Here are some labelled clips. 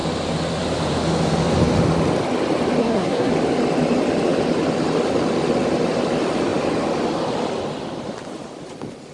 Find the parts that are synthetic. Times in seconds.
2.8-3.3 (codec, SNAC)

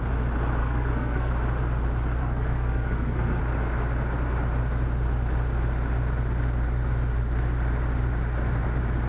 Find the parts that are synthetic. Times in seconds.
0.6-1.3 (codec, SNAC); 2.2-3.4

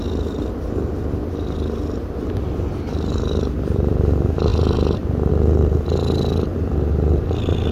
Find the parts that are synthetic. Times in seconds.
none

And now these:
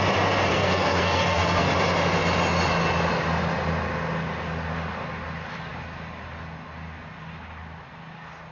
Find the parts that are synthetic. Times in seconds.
0.5-1.7 (codec, SNAC)

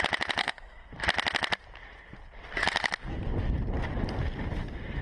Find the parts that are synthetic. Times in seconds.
0.4-0.9 (codec, SNAC)

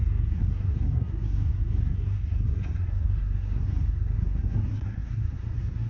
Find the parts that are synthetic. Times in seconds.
0.0-5.9 (codec, SNAC)